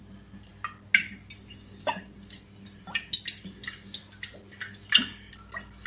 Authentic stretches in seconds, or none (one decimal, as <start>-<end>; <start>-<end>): 0.0-5.9